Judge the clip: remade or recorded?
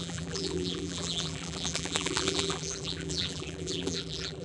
remade